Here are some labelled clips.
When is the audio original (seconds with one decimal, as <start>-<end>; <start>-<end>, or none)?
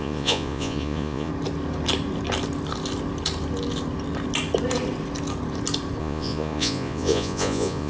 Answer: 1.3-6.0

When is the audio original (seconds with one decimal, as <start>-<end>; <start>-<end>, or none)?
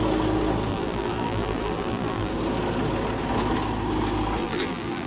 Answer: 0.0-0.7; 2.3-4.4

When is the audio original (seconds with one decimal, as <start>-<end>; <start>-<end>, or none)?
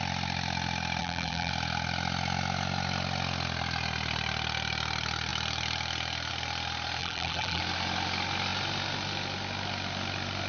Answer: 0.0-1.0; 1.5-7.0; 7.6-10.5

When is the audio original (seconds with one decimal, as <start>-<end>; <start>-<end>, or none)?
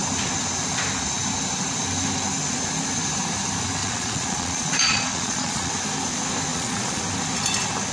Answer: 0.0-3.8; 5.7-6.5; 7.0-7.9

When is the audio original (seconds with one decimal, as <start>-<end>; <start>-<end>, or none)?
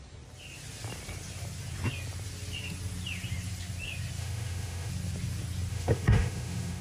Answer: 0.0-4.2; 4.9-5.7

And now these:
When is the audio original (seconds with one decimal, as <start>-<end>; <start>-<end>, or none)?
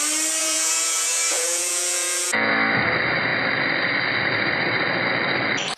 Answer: 0.0-0.4; 2.5-5.8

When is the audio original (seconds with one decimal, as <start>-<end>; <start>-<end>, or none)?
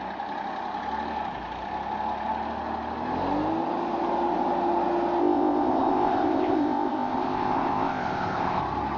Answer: 0.0-5.2; 8.6-9.0